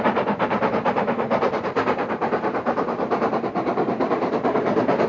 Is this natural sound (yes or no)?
no